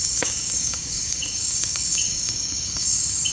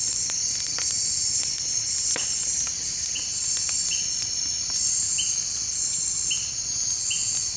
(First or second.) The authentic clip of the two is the second